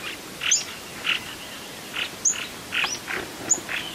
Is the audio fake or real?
real